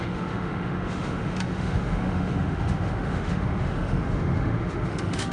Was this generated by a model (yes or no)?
yes